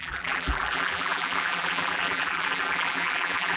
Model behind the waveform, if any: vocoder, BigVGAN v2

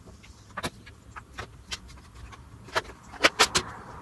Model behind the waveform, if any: none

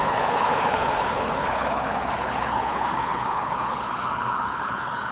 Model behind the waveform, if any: codec, HILCodec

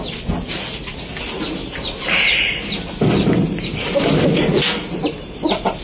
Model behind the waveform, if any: none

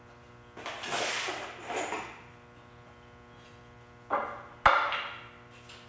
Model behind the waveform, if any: none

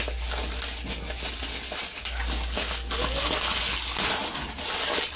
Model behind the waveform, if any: none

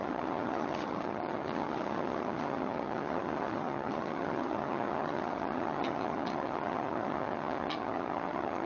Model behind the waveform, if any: vocoder, HiFi-GAN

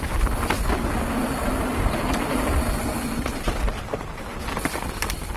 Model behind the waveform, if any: none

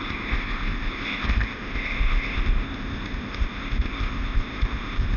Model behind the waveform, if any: codec, ZipCodec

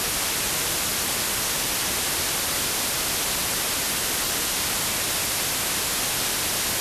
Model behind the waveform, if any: none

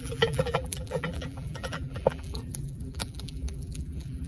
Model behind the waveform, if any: vocoder, BigVGAN v2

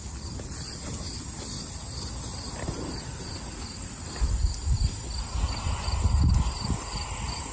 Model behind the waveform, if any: none